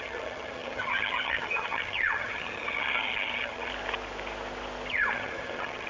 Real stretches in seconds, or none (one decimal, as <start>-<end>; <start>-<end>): 3.7-4.9